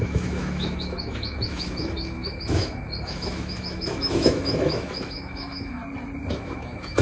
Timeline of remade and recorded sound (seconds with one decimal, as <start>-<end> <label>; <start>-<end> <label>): 0.0-5.8 remade; 5.8-6.3 recorded; 6.3-7.0 remade